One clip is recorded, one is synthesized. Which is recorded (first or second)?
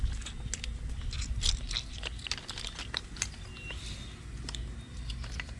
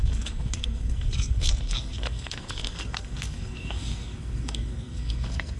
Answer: first